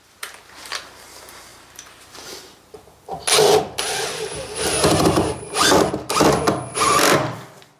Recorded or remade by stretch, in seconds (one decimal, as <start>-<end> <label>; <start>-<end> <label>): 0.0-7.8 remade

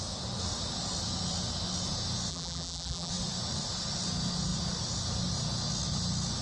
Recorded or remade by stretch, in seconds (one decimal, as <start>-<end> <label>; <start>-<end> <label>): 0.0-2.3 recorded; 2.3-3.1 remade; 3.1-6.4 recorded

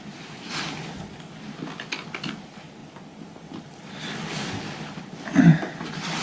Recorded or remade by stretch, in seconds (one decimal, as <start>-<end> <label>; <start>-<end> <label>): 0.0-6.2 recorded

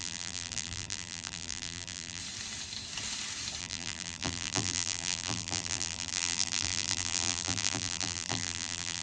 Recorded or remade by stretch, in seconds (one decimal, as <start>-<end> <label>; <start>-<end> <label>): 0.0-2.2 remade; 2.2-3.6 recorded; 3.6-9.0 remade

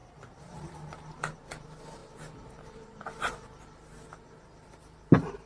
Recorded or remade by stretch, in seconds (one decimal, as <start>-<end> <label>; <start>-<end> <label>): 0.0-5.5 recorded

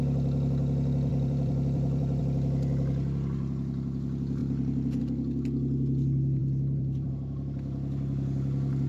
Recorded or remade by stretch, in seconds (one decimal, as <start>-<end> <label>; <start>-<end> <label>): 0.0-1.1 recorded; 1.1-2.2 remade; 2.2-6.4 recorded; 6.4-7.1 remade; 7.1-8.9 recorded